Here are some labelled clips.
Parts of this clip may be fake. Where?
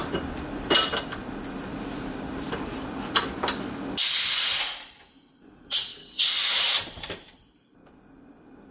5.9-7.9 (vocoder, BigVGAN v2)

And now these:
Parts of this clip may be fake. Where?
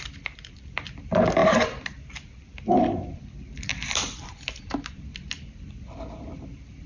0.0-6.9 (vocoder, BigVGAN v2)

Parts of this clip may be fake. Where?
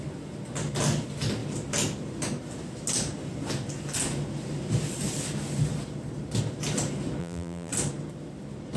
7.2-7.7 (vocoder, BigVGAN v2)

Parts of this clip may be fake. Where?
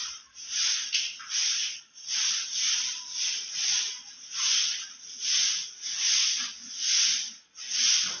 0.0-0.7 (vocoder, BigVGAN v2); 1.4-5.8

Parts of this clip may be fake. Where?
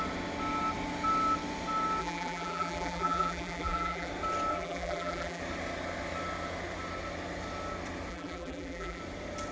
2.0-4.1 (vocoder, BigVGAN v2); 4.5-5.4; 8.1-9.0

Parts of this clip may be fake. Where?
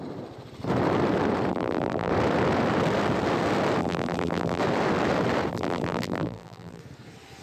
1.5-2.1 (vocoder, BigVGAN v2); 3.8-4.6; 5.5-6.8